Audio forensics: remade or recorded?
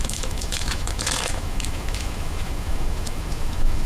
remade